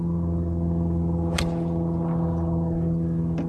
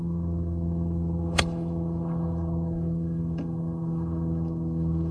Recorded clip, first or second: first